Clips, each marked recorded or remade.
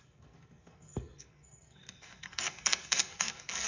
remade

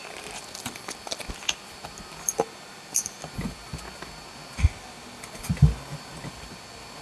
recorded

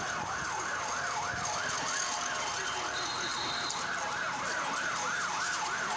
recorded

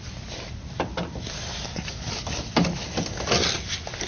recorded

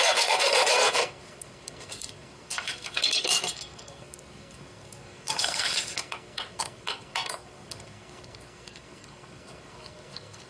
remade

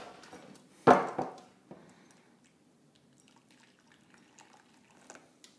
recorded